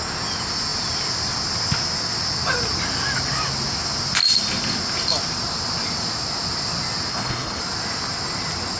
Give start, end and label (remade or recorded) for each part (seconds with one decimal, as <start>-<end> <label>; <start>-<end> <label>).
0.0-7.1 recorded; 7.1-7.6 remade; 7.6-8.8 recorded